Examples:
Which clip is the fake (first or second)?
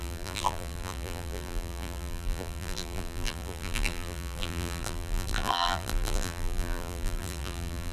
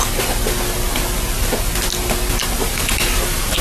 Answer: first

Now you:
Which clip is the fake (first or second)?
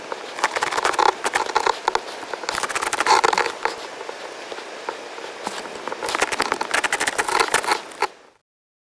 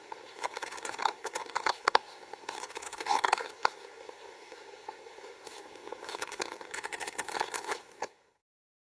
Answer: second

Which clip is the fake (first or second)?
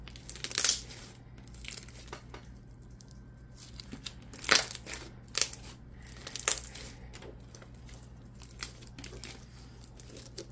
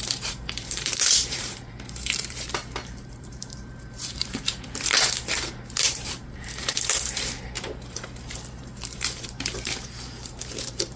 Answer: second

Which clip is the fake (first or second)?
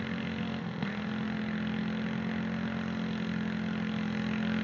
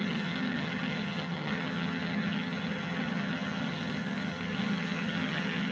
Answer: second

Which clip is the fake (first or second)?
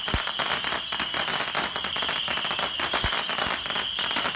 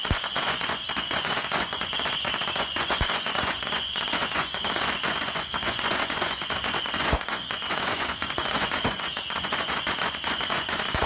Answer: second